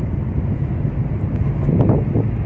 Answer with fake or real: real